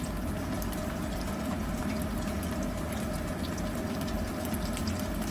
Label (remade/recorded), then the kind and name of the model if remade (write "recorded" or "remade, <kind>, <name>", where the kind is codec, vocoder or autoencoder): recorded